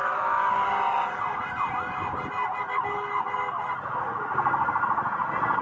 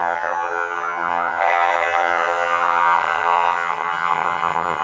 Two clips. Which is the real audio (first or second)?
first